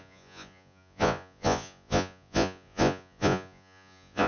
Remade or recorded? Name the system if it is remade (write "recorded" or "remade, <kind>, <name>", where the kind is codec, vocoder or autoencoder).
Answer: remade, vocoder, Vocos